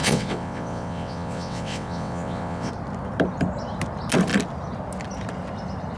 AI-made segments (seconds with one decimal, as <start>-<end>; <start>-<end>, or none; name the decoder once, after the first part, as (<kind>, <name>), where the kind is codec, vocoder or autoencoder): 0.0-2.7 (vocoder, WaveNeXt)

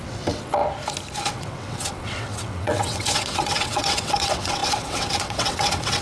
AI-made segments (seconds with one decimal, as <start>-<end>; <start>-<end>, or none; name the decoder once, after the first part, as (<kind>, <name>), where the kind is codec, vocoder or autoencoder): 0.0-0.6 (vocoder, WaveNeXt); 1.3-6.0

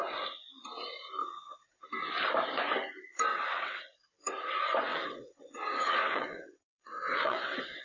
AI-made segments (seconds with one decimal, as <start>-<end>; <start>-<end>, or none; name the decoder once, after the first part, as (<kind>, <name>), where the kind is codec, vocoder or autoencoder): 1.2-1.8 (vocoder, WaveNeXt); 3.3-3.8; 4.9-7.8

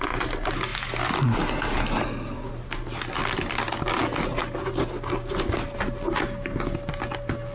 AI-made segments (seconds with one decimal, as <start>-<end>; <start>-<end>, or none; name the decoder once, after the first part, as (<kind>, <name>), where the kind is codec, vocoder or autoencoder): none

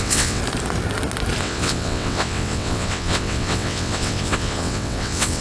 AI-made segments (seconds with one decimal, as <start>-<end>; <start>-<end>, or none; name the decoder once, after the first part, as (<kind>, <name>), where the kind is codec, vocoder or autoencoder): 0.0-0.4 (vocoder, WaveNeXt); 1.4-5.4